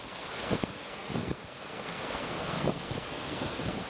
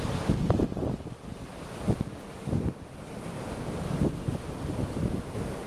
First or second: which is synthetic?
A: first